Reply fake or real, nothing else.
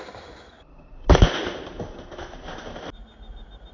real